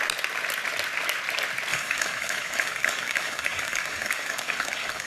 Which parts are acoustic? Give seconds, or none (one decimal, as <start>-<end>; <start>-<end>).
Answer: 0.0-1.7